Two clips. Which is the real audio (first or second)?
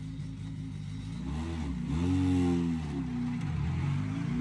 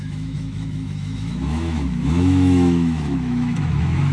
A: first